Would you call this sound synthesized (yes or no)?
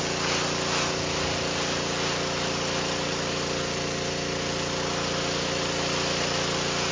no